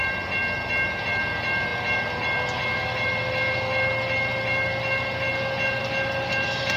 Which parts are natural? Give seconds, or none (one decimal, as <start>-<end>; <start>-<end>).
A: 0.0-6.8

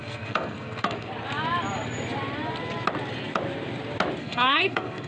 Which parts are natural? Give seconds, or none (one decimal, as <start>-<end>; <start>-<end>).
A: 1.1-4.2